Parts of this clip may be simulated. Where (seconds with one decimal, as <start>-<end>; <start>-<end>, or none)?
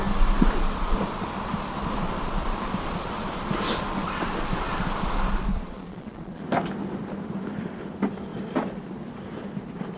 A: 5.5-6.4